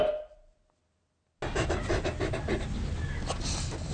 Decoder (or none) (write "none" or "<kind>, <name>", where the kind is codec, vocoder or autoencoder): none